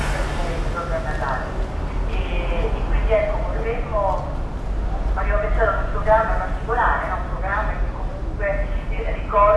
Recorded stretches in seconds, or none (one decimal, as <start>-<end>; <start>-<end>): 0.0-9.6